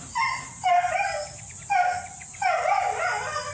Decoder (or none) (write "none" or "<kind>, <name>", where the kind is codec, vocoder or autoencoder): none